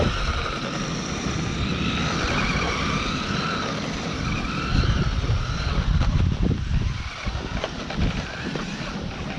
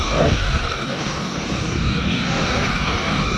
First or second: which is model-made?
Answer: second